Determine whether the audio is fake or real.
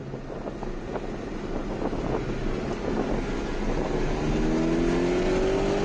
real